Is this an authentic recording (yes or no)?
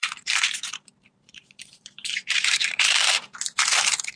no